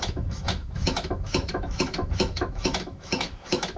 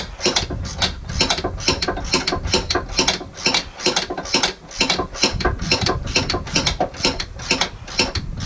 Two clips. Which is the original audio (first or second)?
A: second